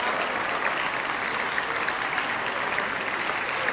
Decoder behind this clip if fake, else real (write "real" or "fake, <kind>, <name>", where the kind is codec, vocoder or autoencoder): real